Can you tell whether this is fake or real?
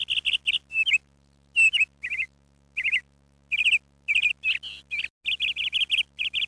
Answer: real